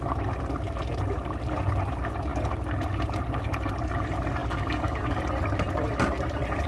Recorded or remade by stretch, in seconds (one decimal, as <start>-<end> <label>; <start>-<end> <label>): 0.0-4.4 recorded; 4.4-5.2 remade; 5.2-6.7 recorded